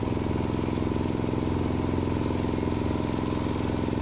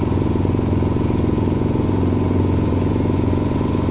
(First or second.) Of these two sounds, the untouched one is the first